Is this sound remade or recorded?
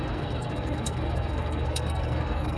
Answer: remade